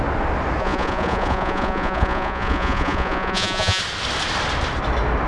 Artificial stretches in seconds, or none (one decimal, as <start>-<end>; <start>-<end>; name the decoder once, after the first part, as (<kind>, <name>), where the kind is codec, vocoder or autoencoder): 0.6-3.8 (vocoder, Vocos)